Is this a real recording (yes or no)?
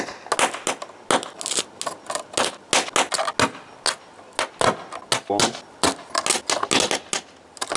yes